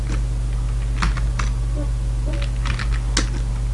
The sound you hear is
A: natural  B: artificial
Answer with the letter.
A